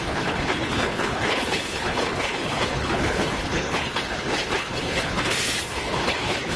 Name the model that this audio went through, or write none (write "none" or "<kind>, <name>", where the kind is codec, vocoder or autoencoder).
codec, HILCodec